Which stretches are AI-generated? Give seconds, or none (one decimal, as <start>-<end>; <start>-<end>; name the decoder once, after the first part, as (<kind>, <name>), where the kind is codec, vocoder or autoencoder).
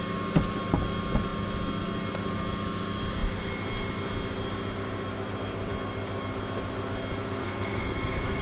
7.4-8.4 (codec, SNAC)